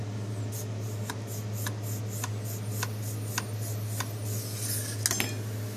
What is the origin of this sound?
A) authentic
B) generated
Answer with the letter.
A